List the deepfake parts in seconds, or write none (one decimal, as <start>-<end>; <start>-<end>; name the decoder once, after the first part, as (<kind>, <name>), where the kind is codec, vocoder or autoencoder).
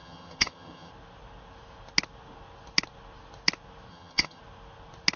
0.0-0.9 (vocoder, HiFi-GAN); 3.9-4.4